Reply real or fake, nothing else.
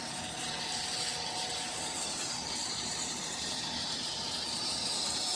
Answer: fake